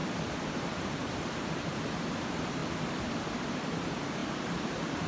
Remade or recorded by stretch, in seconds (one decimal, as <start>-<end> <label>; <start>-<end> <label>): 0.0-0.5 recorded; 0.5-2.6 remade; 2.6-3.8 recorded; 3.8-5.1 remade